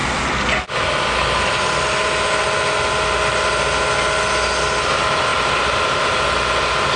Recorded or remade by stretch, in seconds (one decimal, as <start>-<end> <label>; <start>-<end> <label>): 0.0-7.0 recorded